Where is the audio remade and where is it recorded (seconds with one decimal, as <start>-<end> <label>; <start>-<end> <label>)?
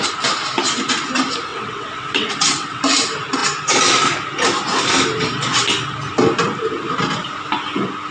0.0-1.5 recorded; 1.5-2.8 remade; 2.8-8.1 recorded